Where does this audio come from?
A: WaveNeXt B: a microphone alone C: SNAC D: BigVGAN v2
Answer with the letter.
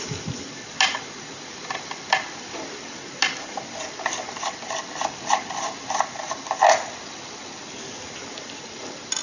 B